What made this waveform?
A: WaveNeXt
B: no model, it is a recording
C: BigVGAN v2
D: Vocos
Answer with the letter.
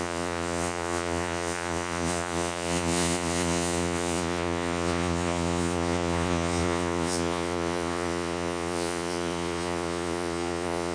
D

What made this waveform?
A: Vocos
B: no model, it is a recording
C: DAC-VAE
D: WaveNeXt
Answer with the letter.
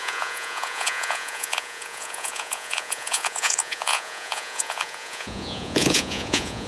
A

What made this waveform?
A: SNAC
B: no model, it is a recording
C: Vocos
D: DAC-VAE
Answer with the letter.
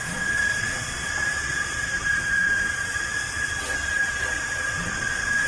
C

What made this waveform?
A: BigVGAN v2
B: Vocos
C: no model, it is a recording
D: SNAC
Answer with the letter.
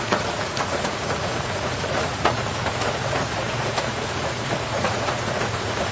B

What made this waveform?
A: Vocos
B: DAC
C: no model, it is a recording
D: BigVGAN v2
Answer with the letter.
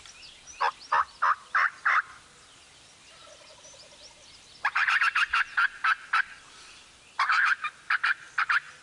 C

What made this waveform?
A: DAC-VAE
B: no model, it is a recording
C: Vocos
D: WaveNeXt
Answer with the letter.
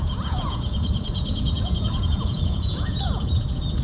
C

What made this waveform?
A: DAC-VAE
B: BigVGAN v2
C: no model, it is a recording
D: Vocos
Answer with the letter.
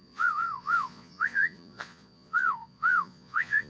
D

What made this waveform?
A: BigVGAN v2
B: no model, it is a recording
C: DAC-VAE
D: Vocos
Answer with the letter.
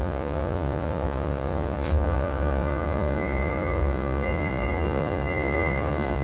D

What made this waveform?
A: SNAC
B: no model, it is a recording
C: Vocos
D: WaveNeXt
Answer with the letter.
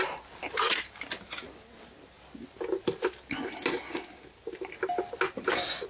B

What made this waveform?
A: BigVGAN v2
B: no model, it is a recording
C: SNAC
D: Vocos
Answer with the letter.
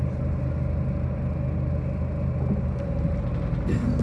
B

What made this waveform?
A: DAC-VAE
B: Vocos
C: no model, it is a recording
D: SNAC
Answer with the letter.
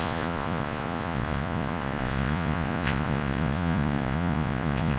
B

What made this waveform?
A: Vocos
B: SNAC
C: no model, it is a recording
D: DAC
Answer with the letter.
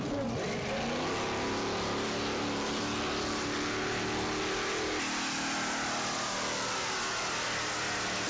C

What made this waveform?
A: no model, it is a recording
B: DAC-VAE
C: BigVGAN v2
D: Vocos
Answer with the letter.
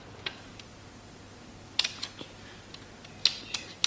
A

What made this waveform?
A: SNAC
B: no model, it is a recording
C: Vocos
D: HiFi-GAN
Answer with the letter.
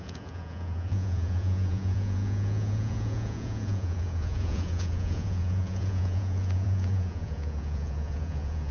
C